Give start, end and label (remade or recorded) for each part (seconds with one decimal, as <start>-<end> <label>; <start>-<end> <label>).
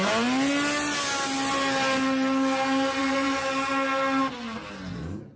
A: 0.0-3.0 recorded; 3.0-3.7 remade; 3.7-5.4 recorded